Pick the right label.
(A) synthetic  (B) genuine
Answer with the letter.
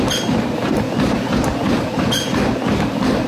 B